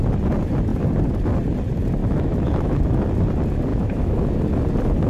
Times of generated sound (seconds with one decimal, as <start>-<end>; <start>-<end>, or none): 2.0-3.0; 3.7-4.4